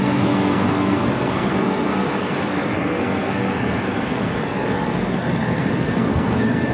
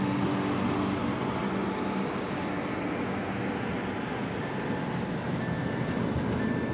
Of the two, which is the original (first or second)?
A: second